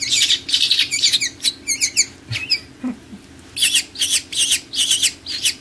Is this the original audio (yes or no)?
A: yes